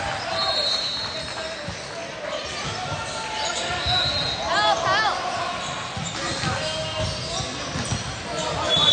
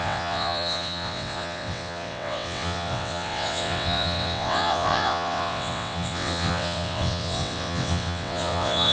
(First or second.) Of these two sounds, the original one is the first